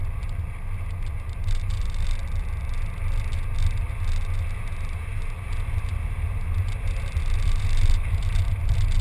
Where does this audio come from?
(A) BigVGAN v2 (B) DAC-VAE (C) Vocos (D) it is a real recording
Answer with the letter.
D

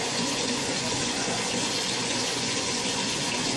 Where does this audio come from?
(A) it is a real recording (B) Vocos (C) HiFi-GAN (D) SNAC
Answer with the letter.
B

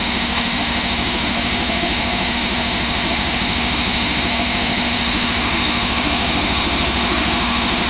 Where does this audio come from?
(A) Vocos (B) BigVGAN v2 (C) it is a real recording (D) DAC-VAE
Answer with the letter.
D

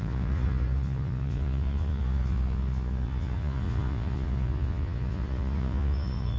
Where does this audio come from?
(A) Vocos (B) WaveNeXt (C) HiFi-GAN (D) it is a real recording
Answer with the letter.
A